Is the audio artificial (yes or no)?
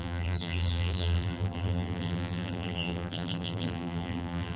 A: yes